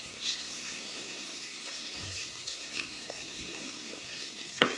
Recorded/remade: remade